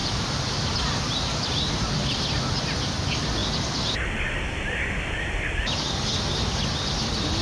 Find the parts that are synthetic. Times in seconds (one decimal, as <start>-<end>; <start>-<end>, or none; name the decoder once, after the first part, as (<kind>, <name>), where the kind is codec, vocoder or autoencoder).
none